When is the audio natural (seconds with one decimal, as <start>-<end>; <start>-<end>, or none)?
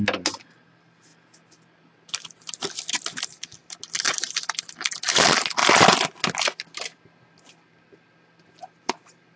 0.0-9.4